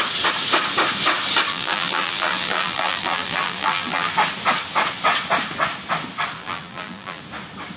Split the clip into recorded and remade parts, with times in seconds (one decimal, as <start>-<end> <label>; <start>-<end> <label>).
0.0-1.5 recorded; 1.5-4.1 remade; 4.1-6.4 recorded; 6.4-7.2 remade; 7.2-7.8 recorded